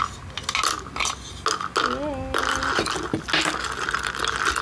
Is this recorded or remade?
recorded